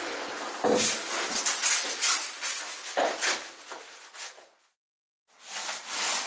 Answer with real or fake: real